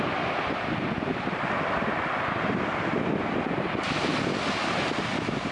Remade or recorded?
recorded